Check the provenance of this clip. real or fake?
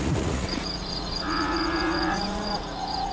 fake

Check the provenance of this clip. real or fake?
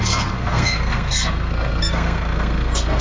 fake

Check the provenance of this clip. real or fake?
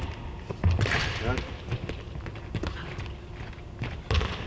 real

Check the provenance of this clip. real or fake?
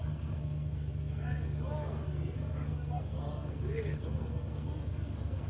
fake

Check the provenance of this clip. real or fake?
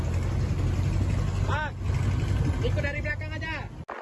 real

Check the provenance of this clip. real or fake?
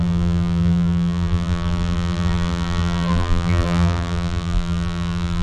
fake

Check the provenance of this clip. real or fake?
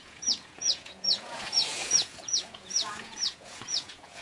fake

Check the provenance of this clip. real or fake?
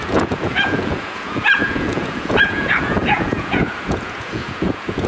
fake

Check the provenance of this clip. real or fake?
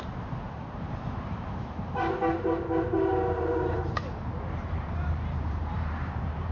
fake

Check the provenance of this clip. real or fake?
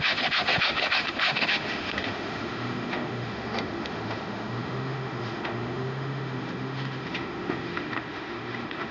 fake